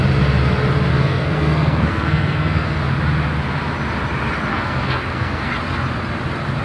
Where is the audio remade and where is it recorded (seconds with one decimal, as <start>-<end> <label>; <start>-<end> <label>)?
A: 0.0-0.9 recorded; 0.9-2.8 remade; 2.8-4.5 recorded; 4.5-5.5 remade; 5.5-6.6 recorded